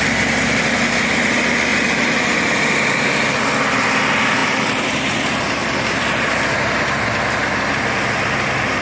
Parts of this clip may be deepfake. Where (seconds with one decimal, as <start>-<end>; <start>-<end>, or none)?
1.7-2.7